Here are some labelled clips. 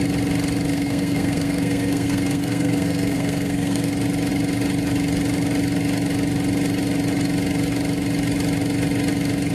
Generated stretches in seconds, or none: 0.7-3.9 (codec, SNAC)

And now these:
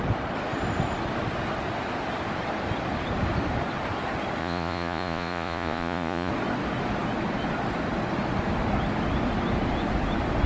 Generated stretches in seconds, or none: 4.4-6.3 (vocoder, Vocos)

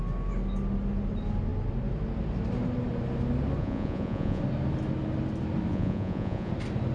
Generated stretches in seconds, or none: 3.6-4.4 (vocoder, Vocos); 5.7-6.5

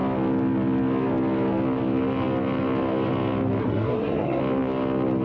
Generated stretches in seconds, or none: 3.6-4.4 (codec, SNAC)

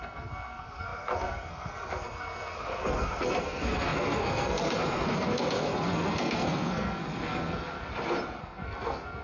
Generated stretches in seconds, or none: 0.0-7.9 (codec, SNAC); 8.4-9.2

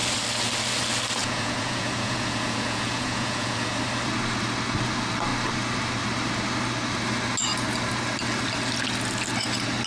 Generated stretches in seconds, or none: 1.2-3.8 (vocoder, Vocos)

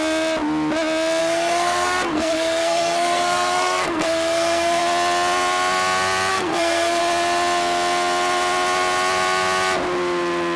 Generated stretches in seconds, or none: 1.2-4.8 (codec, SNAC); 6.3-7.0